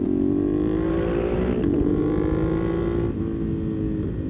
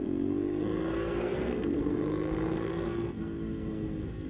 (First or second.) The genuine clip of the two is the first